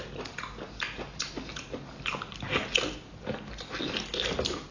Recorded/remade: recorded